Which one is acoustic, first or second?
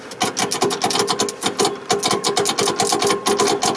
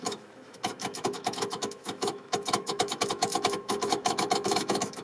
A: first